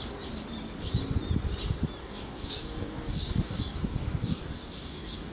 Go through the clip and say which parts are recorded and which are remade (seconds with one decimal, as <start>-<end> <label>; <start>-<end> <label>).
0.0-2.0 recorded; 2.0-5.3 remade